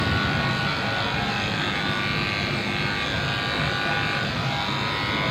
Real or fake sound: real